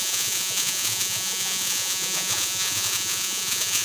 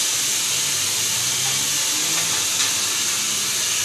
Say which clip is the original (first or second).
second